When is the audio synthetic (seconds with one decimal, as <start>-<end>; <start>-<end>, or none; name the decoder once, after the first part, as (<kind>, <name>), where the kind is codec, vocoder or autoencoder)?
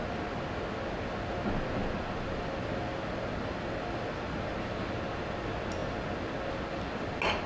none